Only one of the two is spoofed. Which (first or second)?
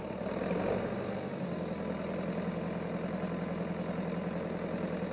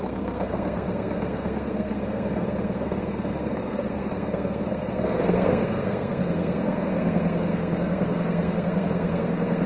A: second